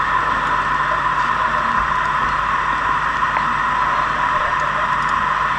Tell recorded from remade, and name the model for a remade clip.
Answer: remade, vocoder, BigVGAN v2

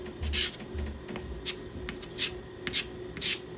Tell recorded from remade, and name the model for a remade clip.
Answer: recorded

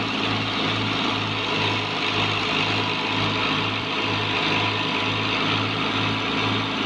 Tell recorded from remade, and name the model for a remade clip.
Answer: recorded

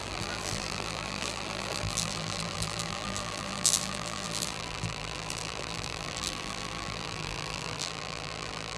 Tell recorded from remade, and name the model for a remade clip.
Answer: remade, vocoder, BigVGAN v2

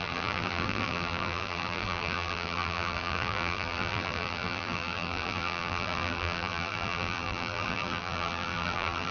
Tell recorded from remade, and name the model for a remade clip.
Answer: remade, vocoder, BigVGAN v2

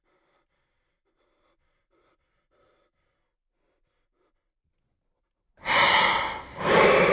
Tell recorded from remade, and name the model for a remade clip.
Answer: recorded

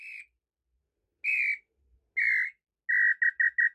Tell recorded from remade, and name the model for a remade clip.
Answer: recorded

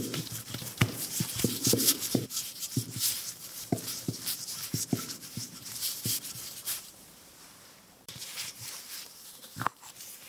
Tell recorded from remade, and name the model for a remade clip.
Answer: remade, vocoder, BigVGAN v2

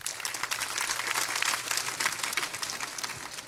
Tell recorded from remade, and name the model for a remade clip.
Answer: recorded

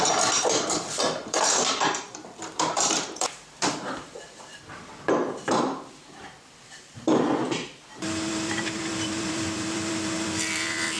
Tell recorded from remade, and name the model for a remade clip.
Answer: remade, vocoder, BigVGAN v2